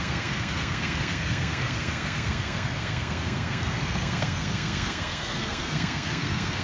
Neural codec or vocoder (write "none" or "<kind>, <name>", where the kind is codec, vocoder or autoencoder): codec, SNAC